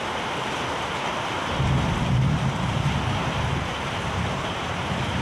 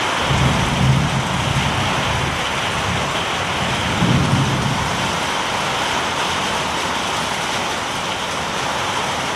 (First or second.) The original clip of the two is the second